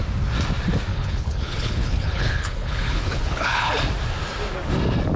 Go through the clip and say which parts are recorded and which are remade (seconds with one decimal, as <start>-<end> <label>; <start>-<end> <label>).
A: 0.0-0.9 recorded; 0.9-3.8 remade; 3.8-5.2 recorded